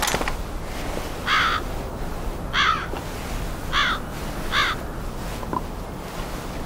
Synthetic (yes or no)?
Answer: no